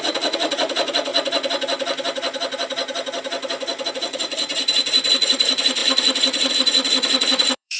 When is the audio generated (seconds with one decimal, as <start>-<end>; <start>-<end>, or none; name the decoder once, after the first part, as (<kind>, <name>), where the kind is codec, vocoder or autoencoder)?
0.0-1.1 (vocoder, Vocos); 3.9-4.5; 5.1-7.8